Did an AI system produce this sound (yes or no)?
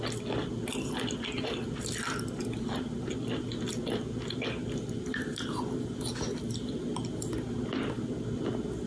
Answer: no